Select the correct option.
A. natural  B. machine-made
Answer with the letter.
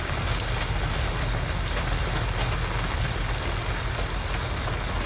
A